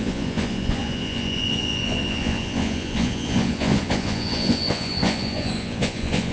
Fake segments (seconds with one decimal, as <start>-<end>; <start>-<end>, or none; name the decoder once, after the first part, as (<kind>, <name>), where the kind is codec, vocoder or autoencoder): 0.0-6.3 (vocoder, Vocos)